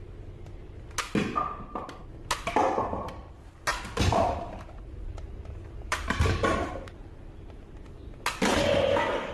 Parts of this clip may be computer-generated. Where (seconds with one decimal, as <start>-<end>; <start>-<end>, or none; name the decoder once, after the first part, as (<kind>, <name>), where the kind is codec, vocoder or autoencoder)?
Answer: 3.7-7.1 (vocoder, BigVGAN v2)